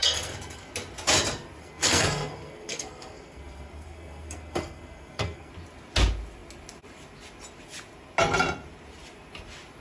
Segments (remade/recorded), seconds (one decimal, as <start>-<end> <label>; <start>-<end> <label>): 0.0-0.7 remade; 0.7-1.6 recorded; 1.6-5.5 remade; 5.5-9.8 recorded